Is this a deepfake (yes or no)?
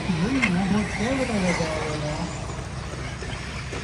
no